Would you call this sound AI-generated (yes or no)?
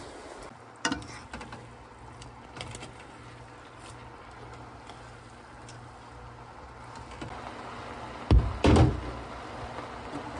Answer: no